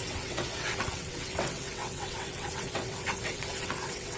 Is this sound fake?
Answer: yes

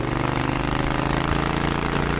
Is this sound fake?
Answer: no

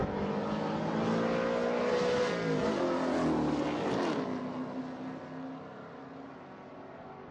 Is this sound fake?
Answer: no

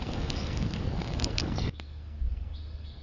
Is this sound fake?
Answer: yes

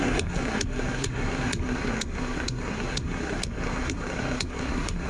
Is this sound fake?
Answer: yes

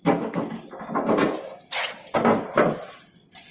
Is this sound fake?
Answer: no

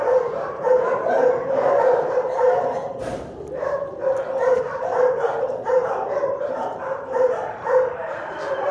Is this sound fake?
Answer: yes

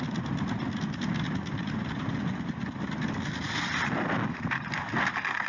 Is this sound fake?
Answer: no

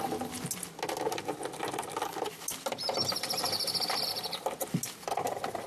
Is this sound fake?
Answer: no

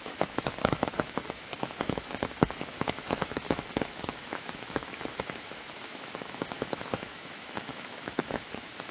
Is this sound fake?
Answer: yes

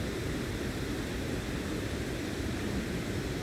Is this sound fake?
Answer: no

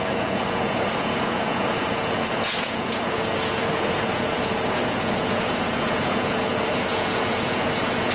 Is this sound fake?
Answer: yes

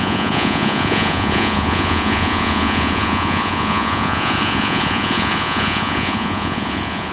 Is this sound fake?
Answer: yes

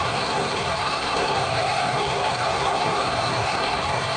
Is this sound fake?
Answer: yes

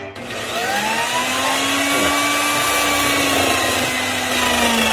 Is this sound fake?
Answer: no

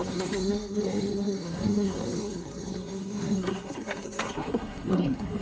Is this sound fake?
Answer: yes